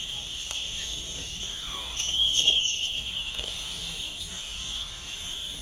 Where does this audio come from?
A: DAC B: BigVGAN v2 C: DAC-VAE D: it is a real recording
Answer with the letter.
A